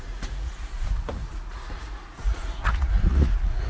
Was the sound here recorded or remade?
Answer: remade